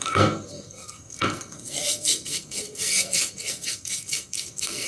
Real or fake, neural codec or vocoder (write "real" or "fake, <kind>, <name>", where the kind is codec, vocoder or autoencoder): fake, codec, SNAC